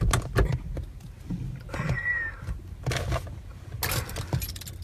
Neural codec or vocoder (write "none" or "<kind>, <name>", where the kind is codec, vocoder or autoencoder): none